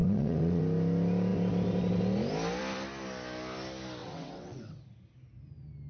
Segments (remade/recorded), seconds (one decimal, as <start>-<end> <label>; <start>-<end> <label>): 0.0-0.6 remade; 0.6-4.0 recorded; 4.0-4.8 remade; 4.8-5.9 recorded